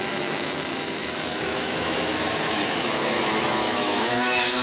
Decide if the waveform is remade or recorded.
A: remade